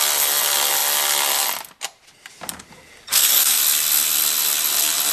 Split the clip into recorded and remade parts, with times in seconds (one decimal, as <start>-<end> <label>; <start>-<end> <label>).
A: 0.0-3.1 recorded; 3.1-3.6 remade; 3.6-5.1 recorded